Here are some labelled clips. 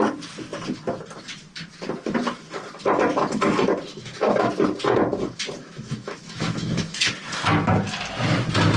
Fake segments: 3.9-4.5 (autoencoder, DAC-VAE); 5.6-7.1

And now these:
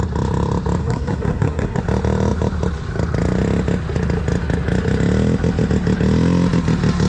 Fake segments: 0.8-1.8 (codec, SNAC)